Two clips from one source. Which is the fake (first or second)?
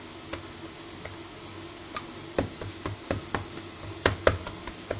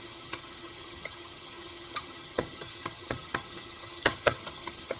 second